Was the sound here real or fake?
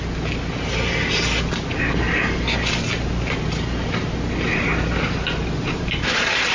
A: real